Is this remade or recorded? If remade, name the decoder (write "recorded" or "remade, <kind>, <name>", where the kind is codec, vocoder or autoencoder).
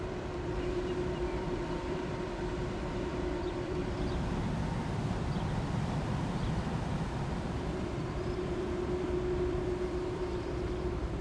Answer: remade, vocoder, BigVGAN v2